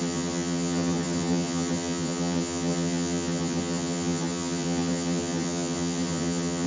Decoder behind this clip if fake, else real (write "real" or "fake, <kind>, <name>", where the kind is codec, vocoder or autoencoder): fake, vocoder, HiFi-GAN